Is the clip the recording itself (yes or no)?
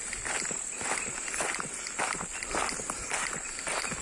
yes